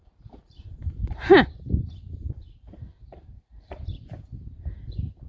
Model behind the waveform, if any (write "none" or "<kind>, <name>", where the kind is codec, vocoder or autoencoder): vocoder, BigVGAN v2